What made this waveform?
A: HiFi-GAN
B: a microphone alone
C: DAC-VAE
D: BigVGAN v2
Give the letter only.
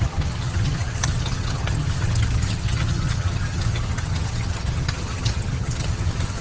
A